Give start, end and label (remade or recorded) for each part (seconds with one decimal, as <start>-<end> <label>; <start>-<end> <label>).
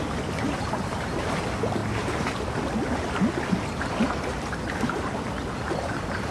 0.0-6.3 recorded